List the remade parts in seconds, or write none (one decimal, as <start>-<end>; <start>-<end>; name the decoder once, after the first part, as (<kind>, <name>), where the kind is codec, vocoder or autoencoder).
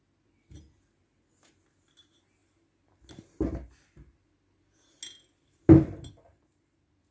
none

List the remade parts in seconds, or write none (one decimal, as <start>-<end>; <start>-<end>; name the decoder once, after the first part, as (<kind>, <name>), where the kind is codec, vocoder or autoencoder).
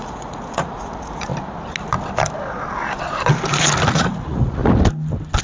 0.0-1.3 (vocoder, Vocos); 3.9-4.6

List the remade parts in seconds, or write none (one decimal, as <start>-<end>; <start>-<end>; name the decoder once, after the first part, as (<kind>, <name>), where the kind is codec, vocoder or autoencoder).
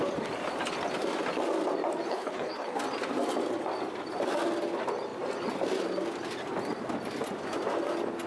2.1-2.8 (codec, HILCodec)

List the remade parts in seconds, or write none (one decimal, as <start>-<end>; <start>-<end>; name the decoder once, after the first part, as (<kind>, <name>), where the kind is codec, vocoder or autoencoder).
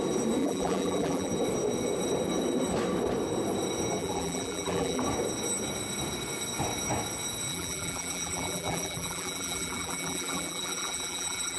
0.4-1.3 (vocoder, BigVGAN v2); 4.0-5.0; 7.5-11.6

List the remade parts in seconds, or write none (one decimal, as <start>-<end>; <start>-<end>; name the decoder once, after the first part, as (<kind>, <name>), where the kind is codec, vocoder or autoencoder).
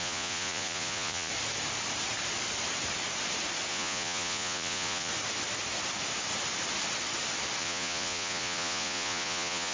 0.0-1.3 (vocoder, Vocos); 3.7-5.1; 7.6-9.7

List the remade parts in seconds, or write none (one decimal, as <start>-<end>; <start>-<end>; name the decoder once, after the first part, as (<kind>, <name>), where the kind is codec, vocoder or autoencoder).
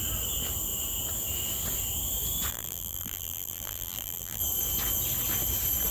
2.5-4.4 (vocoder, BigVGAN v2)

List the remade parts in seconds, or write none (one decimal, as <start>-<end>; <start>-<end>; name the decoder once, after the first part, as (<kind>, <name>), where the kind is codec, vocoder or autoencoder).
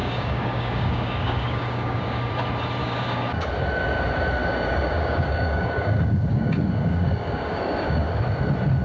0.0-2.3 (codec, DAC); 2.8-3.5; 4.4-8.2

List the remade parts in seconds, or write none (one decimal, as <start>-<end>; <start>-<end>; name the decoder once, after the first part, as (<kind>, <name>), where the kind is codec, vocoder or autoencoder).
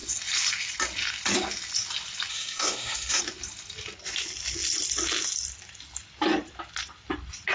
2.3-3.2 (codec, SNAC)